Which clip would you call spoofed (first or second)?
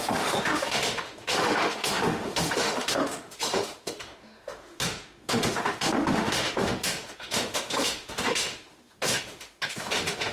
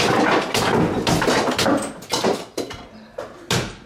first